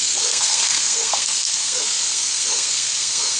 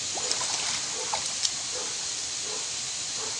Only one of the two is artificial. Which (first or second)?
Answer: first